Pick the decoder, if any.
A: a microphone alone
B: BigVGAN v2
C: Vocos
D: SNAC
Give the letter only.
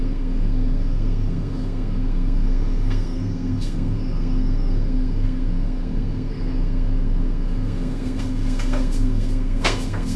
D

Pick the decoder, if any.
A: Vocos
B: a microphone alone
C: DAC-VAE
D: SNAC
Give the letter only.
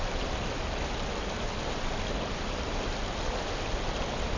B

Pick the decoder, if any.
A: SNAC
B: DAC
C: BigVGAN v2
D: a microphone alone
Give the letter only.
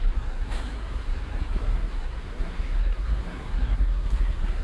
A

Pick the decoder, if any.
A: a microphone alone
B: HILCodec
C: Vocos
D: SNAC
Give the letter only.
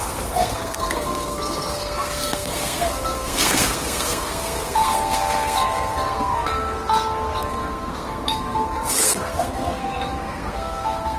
D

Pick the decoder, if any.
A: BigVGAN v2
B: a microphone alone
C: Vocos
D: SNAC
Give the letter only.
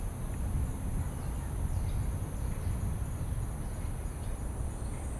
B